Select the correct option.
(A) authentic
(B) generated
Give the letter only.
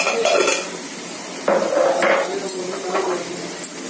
A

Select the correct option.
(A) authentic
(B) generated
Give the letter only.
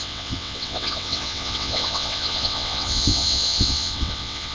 B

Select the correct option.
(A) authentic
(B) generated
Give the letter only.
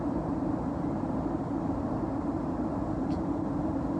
B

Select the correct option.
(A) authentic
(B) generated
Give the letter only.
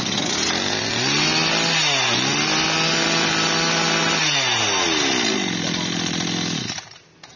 A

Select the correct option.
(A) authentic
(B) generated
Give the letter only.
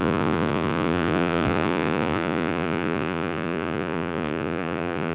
B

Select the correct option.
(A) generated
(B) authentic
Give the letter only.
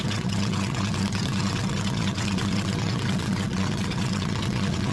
A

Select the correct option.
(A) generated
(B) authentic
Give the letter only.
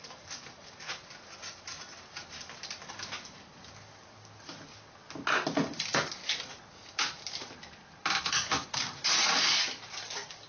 B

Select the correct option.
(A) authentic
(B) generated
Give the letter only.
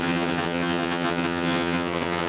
B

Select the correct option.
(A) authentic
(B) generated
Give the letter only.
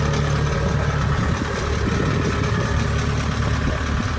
A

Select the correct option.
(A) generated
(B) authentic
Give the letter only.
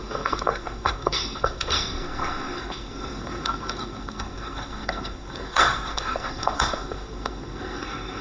A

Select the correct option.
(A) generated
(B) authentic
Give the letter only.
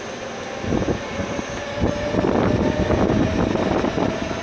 B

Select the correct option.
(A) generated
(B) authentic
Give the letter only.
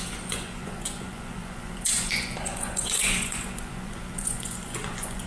A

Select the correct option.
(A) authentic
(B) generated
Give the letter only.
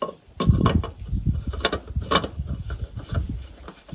A